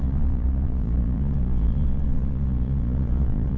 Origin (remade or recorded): remade